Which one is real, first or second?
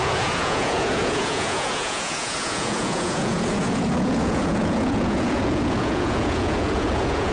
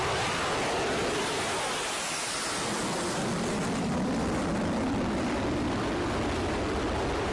second